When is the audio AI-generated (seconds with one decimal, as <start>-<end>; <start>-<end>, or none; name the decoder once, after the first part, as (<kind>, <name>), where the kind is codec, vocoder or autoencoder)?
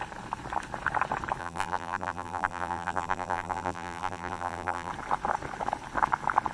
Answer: 1.4-4.9 (vocoder, BigVGAN v2)